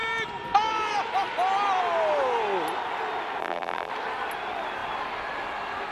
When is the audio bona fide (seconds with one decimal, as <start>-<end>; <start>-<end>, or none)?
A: 0.0-3.4; 3.9-5.9